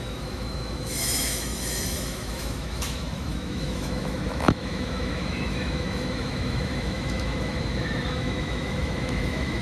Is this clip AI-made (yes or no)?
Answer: yes